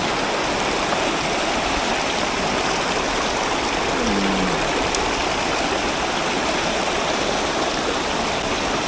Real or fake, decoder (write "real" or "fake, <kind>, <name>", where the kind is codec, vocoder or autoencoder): real